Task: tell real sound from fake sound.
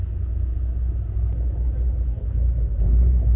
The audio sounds real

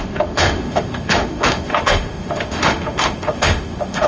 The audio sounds fake